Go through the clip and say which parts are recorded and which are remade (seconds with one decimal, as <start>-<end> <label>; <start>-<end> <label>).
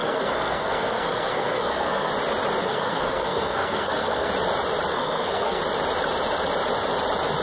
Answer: 0.0-2.1 remade; 2.1-2.6 recorded; 2.6-4.3 remade; 4.3-4.9 recorded; 4.9-5.6 remade; 5.6-7.4 recorded